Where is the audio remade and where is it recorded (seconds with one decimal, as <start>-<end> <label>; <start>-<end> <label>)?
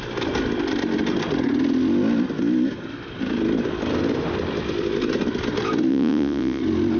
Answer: 0.0-5.9 recorded; 5.9-6.6 remade; 6.6-7.0 recorded